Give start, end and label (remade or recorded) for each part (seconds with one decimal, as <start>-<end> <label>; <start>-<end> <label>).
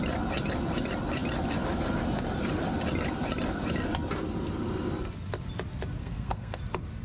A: 0.0-6.0 recorded; 6.0-6.6 remade; 6.6-7.0 recorded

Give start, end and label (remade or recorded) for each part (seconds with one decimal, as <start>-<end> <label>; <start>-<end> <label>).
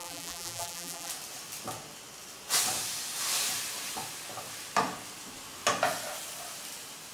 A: 0.0-1.1 remade; 1.1-7.1 recorded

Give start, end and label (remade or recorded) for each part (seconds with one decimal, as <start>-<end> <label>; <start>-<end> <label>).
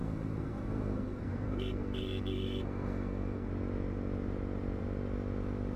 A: 0.0-3.5 remade; 3.5-5.8 recorded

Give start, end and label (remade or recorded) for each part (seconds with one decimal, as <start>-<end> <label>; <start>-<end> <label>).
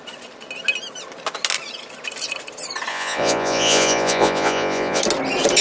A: 0.0-2.9 recorded; 2.9-5.0 remade; 5.0-5.6 recorded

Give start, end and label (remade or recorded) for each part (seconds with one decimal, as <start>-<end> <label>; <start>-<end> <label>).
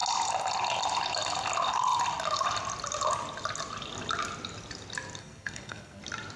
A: 0.0-5.2 recorded; 5.2-6.0 remade; 6.0-6.4 recorded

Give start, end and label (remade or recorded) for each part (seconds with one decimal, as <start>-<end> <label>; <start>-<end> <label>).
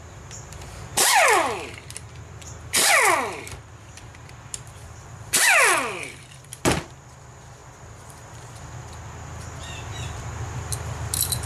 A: 0.0-7.6 remade; 7.6-9.9 recorded; 9.9-11.5 remade